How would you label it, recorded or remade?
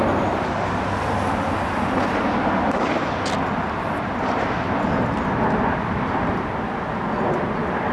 recorded